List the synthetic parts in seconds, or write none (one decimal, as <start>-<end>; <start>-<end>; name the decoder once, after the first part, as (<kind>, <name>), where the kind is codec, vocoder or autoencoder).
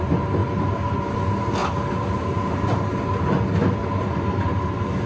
none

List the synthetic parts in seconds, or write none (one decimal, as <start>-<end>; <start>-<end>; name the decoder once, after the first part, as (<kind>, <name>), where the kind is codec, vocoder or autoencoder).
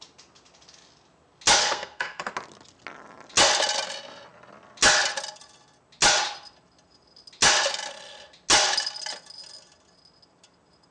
1.6-2.3 (codec, SNAC)